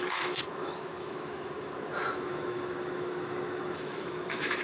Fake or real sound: fake